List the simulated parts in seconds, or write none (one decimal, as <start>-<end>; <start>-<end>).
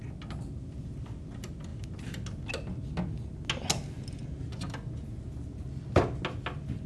none